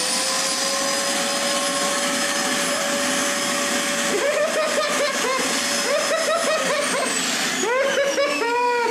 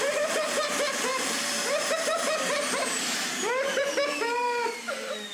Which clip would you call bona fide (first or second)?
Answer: first